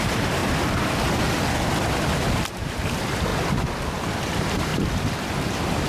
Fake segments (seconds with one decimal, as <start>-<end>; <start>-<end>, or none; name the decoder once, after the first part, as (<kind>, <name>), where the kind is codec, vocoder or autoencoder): 0.0-0.4 (vocoder, BigVGAN v2); 2.5-3.3; 4.0-4.7; 5.3-5.9